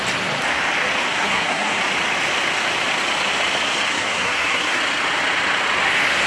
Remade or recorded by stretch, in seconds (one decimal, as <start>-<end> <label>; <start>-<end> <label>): 0.0-1.1 recorded; 1.1-1.8 remade; 1.8-3.9 recorded; 3.9-4.8 remade; 4.8-6.3 recorded